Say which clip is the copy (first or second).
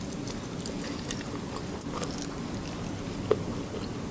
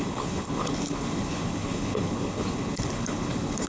second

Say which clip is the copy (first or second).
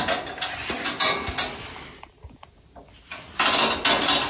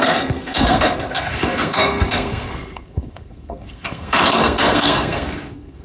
second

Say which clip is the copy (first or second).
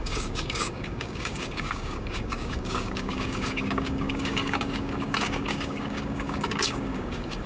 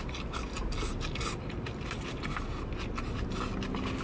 first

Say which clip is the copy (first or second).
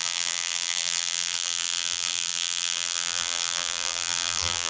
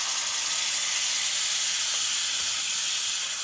first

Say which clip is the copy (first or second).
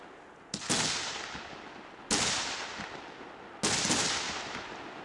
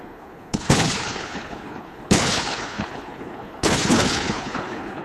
second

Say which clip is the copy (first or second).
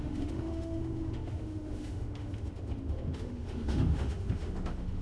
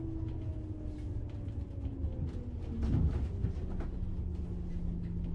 first